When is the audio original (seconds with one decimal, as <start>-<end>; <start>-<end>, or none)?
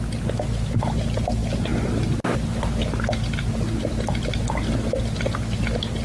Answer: 0.0-6.0